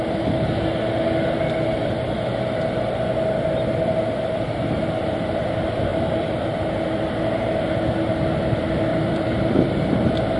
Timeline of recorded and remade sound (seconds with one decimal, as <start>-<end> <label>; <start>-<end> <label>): 0.0-5.9 recorded; 5.9-6.5 remade; 6.5-8.9 recorded; 8.9-10.4 remade

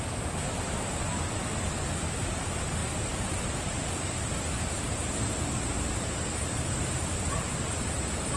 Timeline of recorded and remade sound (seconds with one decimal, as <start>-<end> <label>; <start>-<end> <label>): 0.0-2.8 recorded; 2.8-7.7 remade; 7.7-8.4 recorded

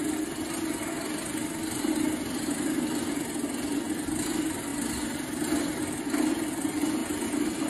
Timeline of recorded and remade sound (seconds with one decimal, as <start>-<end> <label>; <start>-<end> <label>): 0.0-7.7 recorded

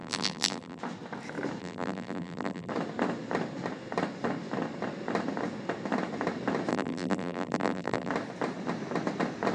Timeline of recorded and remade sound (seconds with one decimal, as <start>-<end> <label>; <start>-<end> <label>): 0.0-0.8 remade; 0.8-1.6 recorded; 1.6-2.7 remade; 2.7-6.7 recorded; 6.7-8.1 remade; 8.1-9.5 recorded

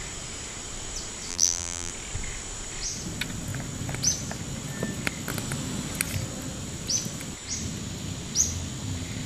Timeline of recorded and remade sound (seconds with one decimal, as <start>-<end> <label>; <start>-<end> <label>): 0.0-1.3 recorded; 1.3-1.9 remade; 1.9-9.3 recorded

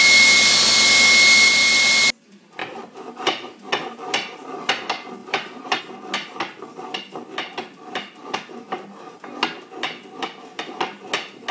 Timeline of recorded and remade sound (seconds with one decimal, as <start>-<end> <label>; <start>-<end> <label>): 0.0-2.6 recorded; 2.6-3.7 remade; 3.7-5.2 recorded; 5.2-5.8 remade; 5.8-11.5 recorded

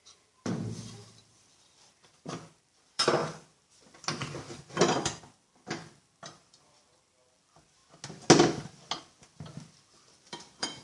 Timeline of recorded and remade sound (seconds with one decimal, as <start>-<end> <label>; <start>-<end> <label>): 0.0-3.2 remade; 3.2-4.8 recorded; 4.8-7.8 remade; 7.8-9.0 recorded; 9.0-10.8 remade